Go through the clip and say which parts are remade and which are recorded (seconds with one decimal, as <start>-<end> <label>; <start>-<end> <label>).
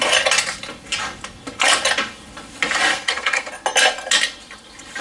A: 0.0-2.9 recorded; 2.9-3.5 remade; 3.5-5.0 recorded